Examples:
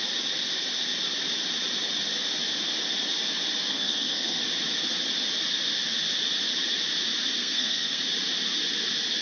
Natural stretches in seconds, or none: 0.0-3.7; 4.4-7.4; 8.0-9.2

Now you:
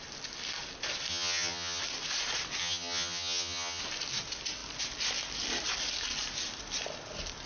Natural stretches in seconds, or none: 0.0-1.1; 1.8-2.6; 3.8-7.5

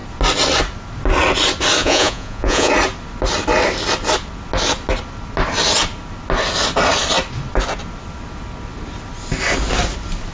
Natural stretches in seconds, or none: 0.0-1.8; 2.7-10.3

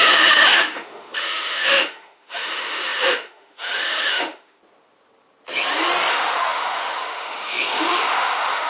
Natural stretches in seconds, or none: 4.6-6.1

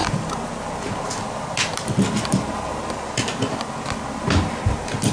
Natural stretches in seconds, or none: 0.0-5.1

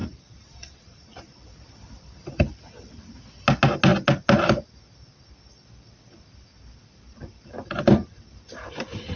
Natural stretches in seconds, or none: 3.2-6.8

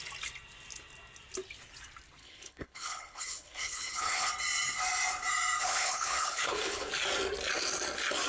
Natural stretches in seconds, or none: 0.0-2.2; 4.3-5.6; 6.9-8.3